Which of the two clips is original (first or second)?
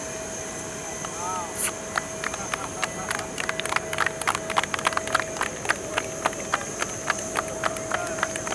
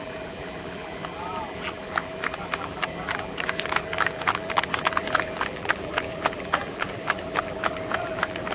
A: first